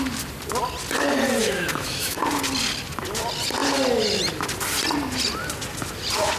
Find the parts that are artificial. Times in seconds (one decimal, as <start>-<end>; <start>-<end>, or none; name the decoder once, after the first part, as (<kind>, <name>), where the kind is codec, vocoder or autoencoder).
1.4-2.2 (autoencoder, DAC-VAE)